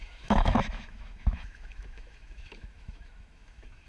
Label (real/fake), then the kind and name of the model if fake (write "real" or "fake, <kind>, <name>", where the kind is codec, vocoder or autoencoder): fake, autoencoder, DAC-VAE